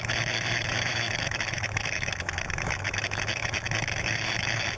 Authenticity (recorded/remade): remade